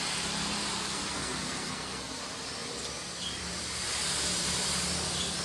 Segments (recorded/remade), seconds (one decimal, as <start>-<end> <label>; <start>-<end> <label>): 0.0-0.7 recorded; 0.7-2.2 remade; 2.2-5.4 recorded